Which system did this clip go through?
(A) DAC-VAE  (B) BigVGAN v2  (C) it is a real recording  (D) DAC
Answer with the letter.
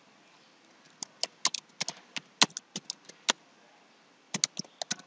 C